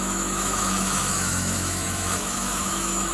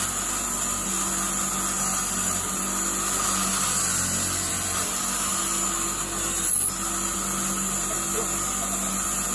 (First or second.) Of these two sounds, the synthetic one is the first